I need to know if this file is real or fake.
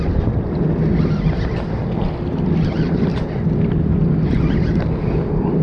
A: real